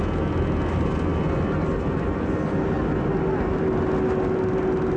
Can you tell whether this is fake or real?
real